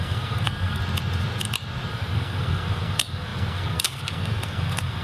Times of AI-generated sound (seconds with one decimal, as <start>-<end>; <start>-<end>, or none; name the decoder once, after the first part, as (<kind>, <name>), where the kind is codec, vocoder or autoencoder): 0.0-0.8 (codec, SNAC); 1.9-5.0